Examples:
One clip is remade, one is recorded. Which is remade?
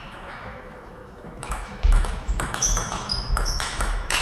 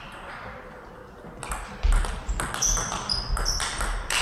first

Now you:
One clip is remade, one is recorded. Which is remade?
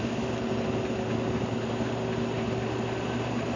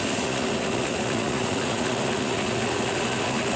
second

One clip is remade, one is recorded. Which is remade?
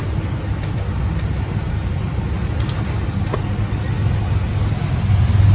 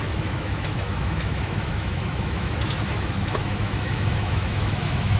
second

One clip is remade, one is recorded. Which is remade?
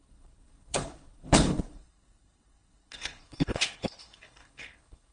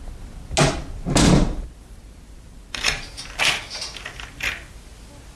first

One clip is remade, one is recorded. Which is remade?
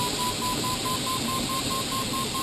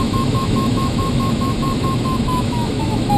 second